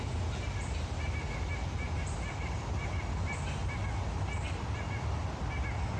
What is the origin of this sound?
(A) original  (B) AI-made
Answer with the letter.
A